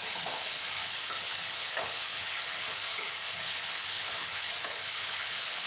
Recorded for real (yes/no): no